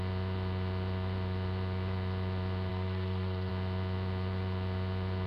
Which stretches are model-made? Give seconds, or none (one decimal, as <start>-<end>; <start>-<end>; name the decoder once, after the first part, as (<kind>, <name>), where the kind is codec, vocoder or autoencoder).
2.7-3.5 (codec, SNAC)